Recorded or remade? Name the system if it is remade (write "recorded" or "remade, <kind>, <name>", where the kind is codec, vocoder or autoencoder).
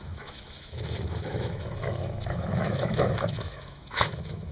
remade, autoencoder, DAC-VAE